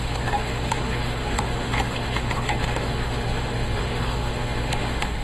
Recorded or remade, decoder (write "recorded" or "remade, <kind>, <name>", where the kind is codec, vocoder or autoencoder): remade, autoencoder, DAC-VAE